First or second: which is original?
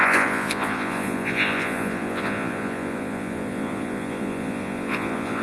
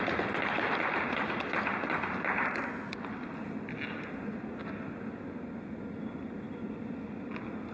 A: second